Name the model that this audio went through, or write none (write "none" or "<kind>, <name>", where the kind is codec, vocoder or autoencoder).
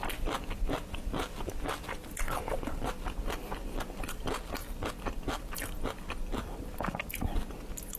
none